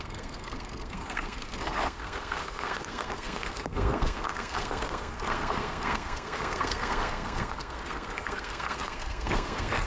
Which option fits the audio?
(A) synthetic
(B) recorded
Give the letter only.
A